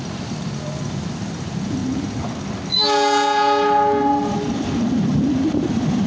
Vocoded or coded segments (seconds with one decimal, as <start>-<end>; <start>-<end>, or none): none